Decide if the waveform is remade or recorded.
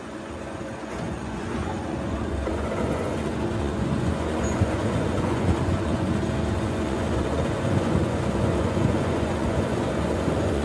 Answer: remade